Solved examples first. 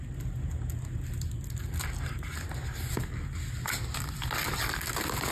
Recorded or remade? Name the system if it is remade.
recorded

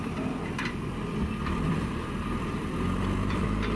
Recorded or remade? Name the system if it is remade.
remade, vocoder, BigVGAN v2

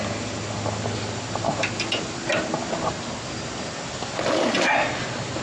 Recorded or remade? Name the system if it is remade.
recorded